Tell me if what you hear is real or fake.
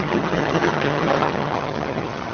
fake